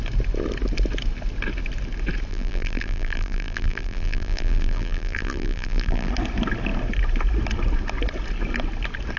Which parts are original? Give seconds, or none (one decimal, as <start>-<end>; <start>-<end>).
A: 0.0-2.3; 6.1-9.2